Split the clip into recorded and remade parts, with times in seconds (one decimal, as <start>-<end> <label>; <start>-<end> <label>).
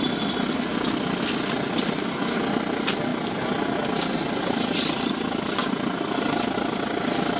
0.0-7.4 recorded